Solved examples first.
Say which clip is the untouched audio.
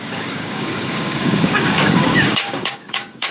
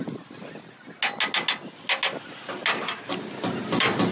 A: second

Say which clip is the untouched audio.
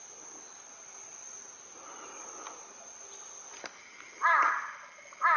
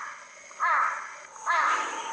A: first